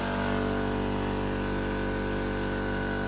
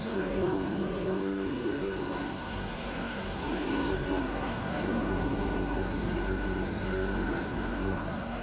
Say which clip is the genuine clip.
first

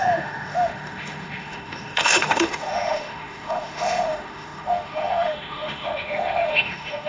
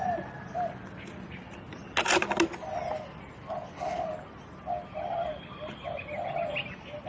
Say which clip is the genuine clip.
second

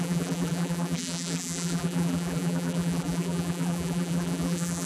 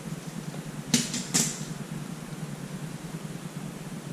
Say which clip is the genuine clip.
second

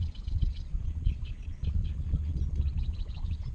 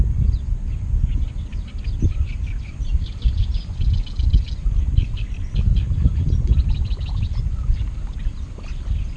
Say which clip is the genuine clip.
second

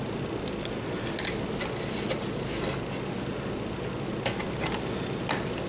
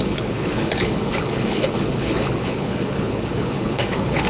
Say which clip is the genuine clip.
first